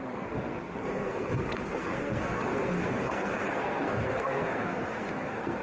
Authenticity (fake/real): fake